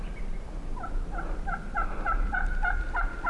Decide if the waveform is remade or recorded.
recorded